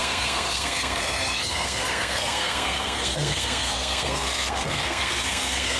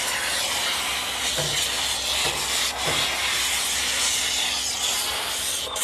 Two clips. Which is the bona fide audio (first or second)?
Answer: second